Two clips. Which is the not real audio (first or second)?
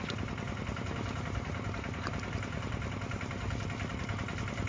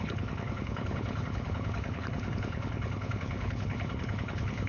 second